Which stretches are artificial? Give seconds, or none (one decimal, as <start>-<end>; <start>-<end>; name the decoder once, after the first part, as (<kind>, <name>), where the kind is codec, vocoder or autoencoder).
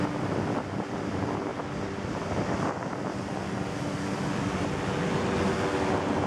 none